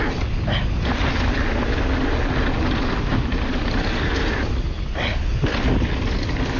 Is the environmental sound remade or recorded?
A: recorded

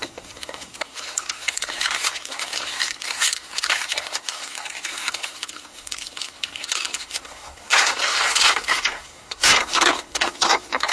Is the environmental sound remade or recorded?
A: remade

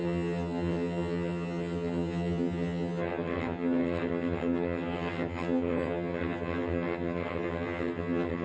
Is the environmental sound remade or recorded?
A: remade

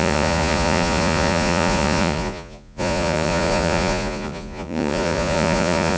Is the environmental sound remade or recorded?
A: remade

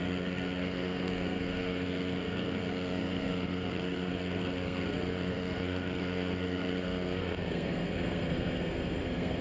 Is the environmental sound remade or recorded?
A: remade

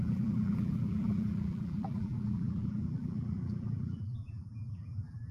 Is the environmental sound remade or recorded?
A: remade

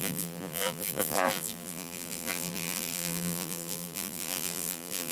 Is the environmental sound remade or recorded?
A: remade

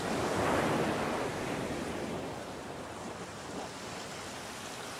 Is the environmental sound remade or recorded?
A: recorded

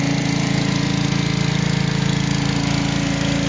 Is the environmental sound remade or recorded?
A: recorded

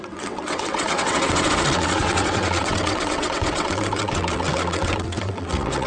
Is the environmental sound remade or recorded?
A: remade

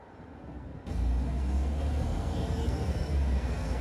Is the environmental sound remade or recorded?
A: remade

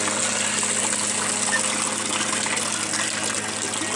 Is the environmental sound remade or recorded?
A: recorded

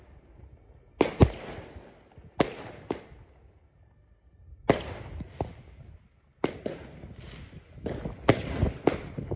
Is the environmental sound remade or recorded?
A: recorded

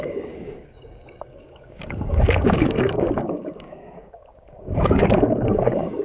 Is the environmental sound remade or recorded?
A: remade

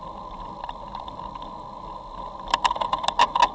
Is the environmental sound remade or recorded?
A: recorded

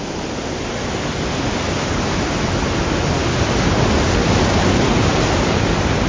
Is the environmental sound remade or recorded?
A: recorded